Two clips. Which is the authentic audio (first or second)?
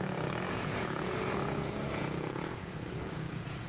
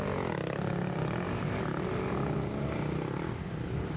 second